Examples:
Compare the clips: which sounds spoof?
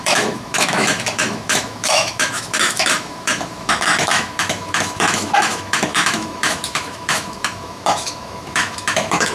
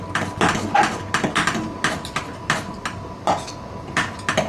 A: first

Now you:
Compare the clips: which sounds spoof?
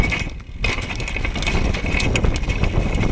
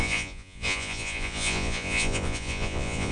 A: second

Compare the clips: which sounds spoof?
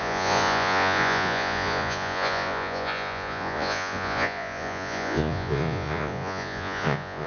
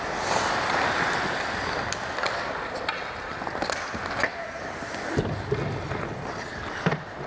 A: first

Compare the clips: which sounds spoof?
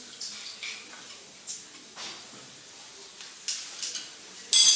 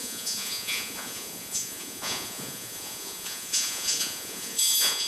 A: second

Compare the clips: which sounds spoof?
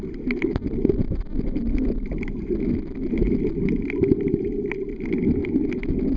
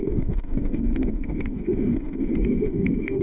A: second